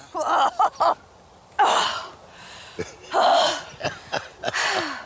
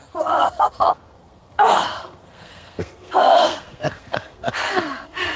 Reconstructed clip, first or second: second